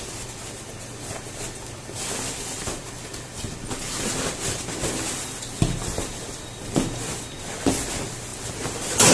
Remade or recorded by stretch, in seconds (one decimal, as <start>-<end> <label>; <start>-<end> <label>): 0.0-9.1 recorded